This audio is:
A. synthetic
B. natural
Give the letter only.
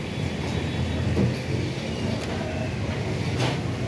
B